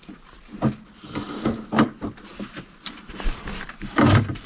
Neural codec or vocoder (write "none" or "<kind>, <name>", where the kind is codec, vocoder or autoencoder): none